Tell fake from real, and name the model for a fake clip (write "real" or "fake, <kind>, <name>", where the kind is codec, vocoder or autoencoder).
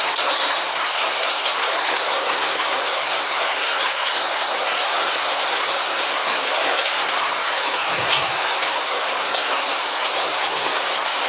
fake, codec, SNAC